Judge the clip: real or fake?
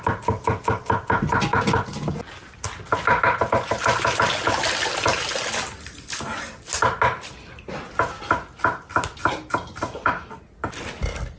real